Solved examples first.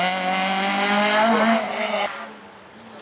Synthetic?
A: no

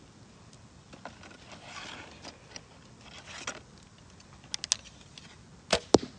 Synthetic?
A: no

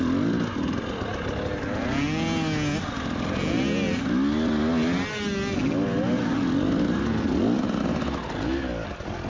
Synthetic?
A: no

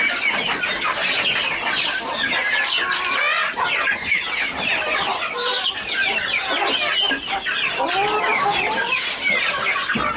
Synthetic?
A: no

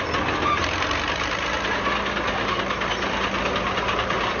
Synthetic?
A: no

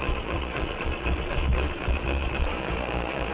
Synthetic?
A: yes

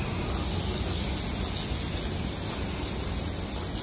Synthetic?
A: no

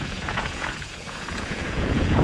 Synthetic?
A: yes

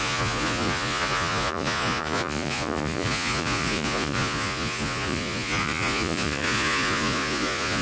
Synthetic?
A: yes